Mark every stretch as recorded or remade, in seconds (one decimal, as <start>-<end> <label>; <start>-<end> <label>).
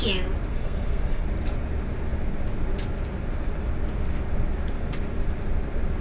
0.0-0.5 recorded; 0.5-1.2 remade; 1.2-6.0 recorded